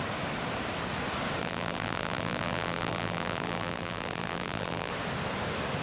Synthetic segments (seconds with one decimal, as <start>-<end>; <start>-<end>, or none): 1.4-4.9